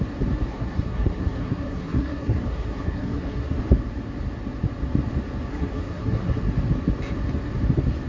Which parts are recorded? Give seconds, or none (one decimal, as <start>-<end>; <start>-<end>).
0.0-0.5; 3.6-5.5; 6.5-8.1